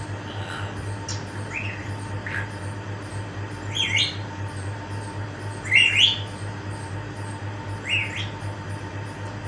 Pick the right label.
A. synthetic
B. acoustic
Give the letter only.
B